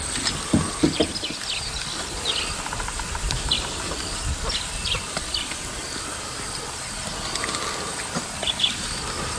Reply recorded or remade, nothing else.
recorded